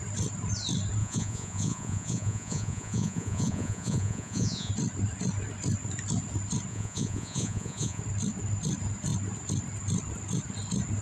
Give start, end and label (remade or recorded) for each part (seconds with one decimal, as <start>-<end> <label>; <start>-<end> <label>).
0.0-1.0 recorded; 1.0-4.7 remade; 4.7-6.7 recorded; 6.7-8.0 remade; 8.0-11.0 recorded